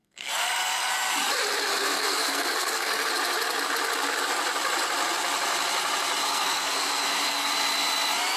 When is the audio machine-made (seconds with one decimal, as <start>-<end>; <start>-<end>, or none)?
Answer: 0.0-0.9; 1.7-3.1; 6.2-7.5